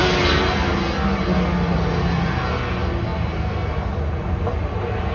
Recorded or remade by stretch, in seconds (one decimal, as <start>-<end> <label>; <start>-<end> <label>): 0.0-5.1 recorded